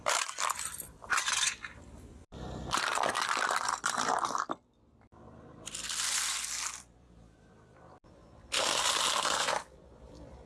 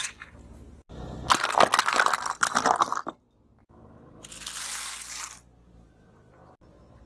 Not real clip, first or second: first